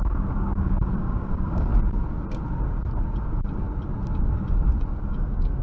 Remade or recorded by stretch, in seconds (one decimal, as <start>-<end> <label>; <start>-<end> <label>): 0.0-1.7 remade; 1.7-5.1 recorded; 5.1-5.6 remade